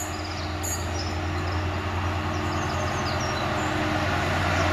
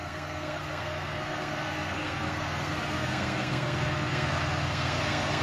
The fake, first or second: second